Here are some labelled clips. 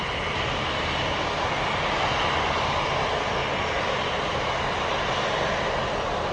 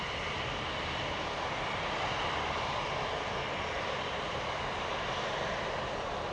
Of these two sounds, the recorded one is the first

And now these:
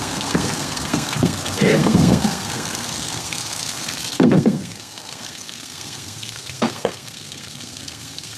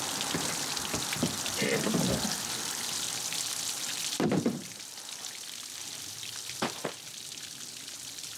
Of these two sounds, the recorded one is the second